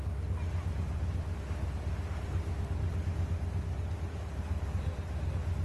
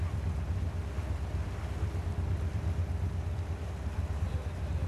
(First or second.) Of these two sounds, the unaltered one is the first